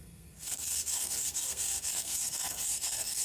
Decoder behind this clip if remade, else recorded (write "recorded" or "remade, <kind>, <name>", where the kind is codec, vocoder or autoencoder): remade, codec, SNAC